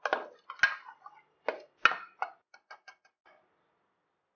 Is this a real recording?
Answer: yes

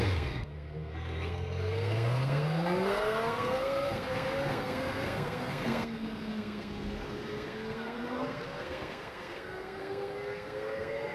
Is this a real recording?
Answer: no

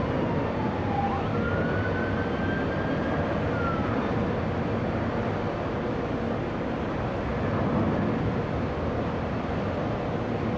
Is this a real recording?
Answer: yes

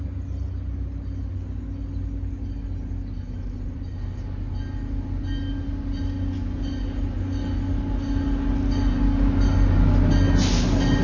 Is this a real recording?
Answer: yes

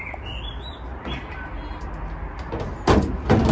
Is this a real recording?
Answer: yes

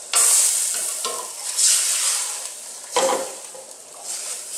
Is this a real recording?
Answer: yes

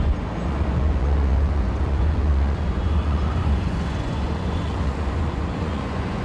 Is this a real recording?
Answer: no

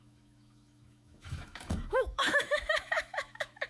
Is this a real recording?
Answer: no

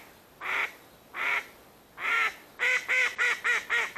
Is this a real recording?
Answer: yes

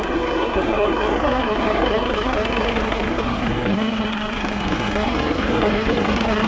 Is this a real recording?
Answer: no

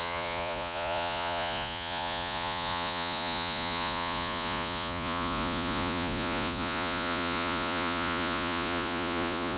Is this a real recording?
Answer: no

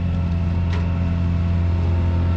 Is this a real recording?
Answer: yes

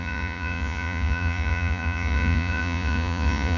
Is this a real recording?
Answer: no